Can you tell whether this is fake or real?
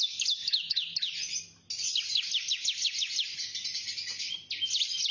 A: real